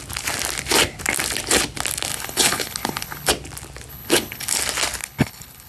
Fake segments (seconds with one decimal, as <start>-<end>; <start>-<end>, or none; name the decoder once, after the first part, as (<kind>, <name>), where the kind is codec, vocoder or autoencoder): 2.1-3.3 (codec, HILCodec); 3.9-4.6; 5.0-5.7